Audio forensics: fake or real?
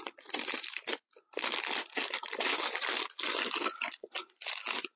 real